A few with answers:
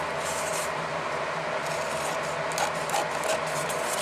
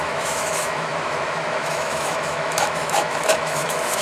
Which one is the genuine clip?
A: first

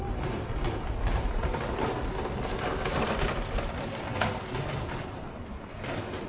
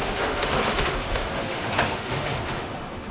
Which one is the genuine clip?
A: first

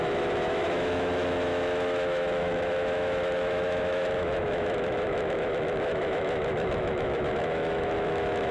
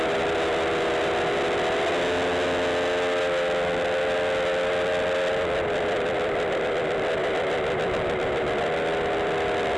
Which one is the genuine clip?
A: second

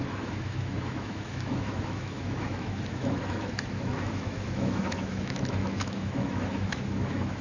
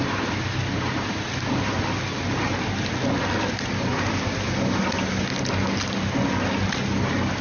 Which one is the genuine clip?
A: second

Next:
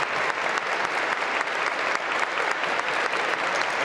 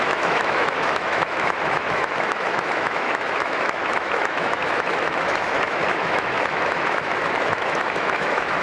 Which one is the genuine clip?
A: first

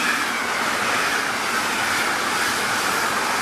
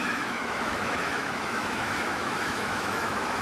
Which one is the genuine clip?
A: first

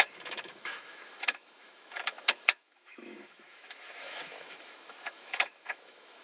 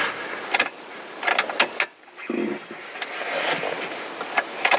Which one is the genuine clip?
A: second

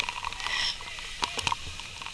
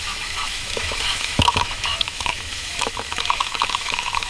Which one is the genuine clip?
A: first